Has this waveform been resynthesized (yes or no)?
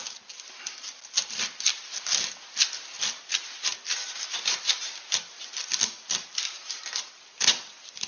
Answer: no